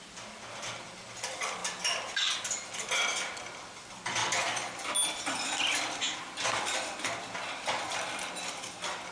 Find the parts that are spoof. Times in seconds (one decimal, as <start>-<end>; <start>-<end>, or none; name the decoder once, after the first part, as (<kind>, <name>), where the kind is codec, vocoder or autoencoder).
none

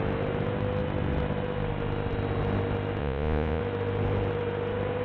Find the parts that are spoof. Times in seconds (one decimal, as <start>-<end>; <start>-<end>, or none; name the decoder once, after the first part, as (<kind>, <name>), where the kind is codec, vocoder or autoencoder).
3.0-3.6 (vocoder, Vocos)

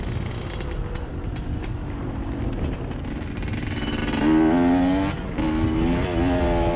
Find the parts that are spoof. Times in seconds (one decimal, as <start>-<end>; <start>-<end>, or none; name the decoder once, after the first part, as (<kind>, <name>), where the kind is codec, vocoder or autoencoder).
none

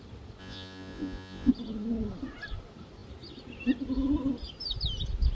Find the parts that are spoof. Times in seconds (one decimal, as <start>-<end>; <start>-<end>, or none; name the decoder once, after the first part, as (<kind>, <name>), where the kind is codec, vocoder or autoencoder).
0.4-1.5 (vocoder, Vocos)

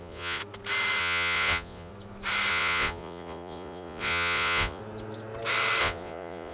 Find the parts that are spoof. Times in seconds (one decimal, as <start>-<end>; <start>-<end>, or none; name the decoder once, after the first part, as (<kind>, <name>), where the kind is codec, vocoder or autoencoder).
0.0-0.4 (vocoder, Vocos); 1.0-1.9; 2.5-4.8; 5.8-6.5

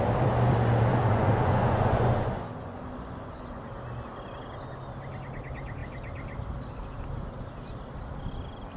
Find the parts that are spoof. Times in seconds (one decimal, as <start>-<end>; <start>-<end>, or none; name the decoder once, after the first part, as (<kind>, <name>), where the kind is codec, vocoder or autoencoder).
0.9-3.6 (vocoder, Vocos)

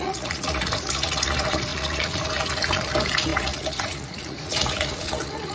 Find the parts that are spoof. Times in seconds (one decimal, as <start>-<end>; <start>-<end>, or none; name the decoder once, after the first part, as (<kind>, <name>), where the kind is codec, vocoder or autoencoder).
0.0-5.5 (vocoder, Vocos)

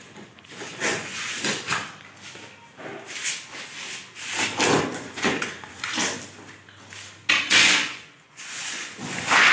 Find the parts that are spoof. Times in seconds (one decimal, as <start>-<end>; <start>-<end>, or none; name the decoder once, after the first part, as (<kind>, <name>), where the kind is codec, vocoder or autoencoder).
0.0-1.8 (vocoder, Vocos); 4.9-6.0; 7.4-9.5